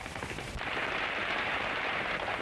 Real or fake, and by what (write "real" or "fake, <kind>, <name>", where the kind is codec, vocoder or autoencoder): fake, vocoder, BigVGAN v2